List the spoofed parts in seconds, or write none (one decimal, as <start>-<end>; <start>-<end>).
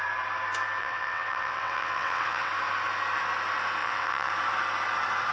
0.8-2.5; 3.8-4.3